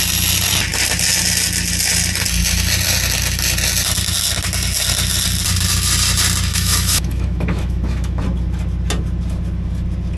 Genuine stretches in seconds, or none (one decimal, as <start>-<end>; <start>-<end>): 0.0-6.5; 8.2-10.2